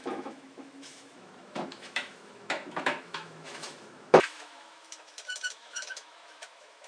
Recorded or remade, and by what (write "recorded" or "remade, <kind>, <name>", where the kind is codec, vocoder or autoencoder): remade, autoencoder, DAC-VAE